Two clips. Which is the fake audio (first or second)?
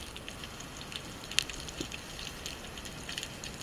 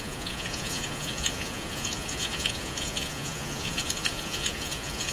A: second